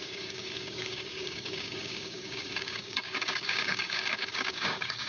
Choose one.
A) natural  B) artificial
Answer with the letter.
B